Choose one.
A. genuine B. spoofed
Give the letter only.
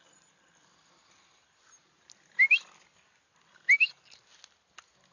A